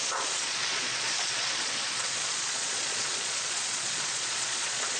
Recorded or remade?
remade